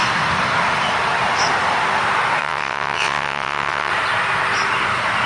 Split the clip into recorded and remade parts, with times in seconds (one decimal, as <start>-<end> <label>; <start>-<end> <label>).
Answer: 0.0-2.4 recorded; 2.4-3.9 remade; 3.9-5.3 recorded